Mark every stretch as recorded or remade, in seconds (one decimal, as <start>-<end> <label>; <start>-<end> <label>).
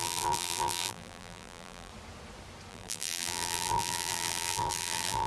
0.0-1.9 remade; 1.9-2.7 recorded; 2.7-5.3 remade